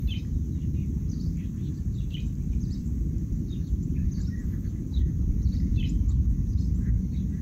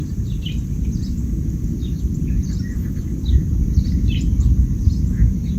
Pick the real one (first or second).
second